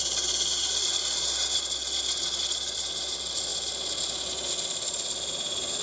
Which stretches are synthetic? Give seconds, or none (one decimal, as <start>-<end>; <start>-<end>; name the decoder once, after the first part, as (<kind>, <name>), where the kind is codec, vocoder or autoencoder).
none